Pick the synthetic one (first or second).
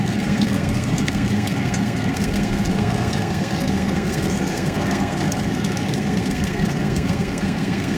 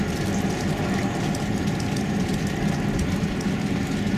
first